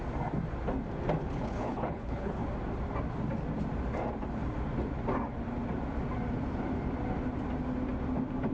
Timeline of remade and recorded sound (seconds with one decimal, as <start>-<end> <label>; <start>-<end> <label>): 0.0-1.2 recorded; 1.2-2.4 remade; 2.4-8.5 recorded